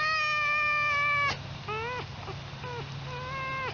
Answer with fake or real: real